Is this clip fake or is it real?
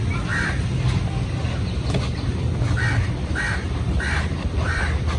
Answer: fake